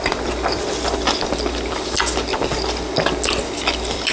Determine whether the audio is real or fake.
real